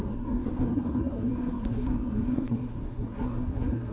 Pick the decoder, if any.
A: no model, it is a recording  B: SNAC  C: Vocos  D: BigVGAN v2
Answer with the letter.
B